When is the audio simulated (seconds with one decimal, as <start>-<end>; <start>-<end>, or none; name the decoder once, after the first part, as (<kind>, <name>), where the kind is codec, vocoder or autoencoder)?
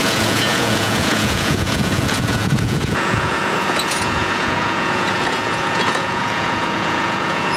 0.0-7.6 (vocoder, Vocos)